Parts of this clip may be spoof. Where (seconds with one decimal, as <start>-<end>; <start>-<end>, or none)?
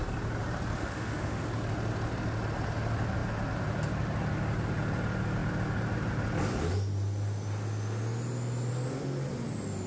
0.8-1.5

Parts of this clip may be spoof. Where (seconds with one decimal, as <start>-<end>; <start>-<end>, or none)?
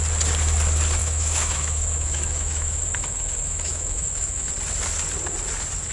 1.0-4.5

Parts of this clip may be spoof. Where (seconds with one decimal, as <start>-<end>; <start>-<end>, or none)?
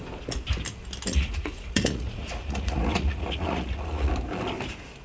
1.1-4.1